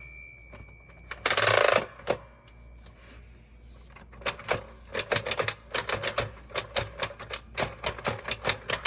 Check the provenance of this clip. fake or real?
real